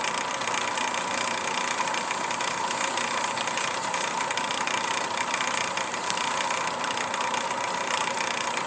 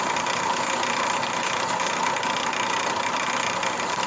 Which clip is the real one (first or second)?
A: second